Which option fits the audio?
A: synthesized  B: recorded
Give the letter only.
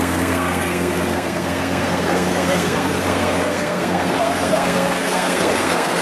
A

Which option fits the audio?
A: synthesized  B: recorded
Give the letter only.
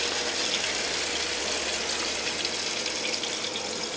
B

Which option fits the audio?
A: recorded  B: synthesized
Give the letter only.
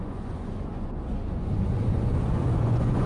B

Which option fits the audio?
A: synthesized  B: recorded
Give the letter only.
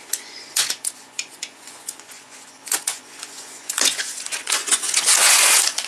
A